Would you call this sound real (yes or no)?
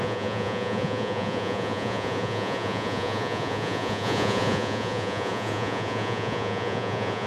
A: no